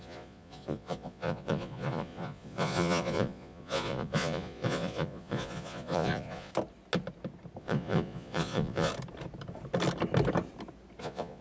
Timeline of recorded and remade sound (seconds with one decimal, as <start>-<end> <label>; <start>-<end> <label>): 0.0-6.5 remade; 6.5-7.6 recorded; 7.6-8.9 remade; 8.9-11.0 recorded; 11.0-11.4 remade